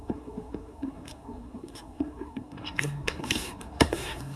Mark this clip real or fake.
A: fake